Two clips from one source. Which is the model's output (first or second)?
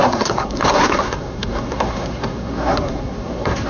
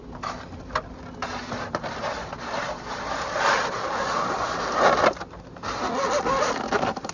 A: first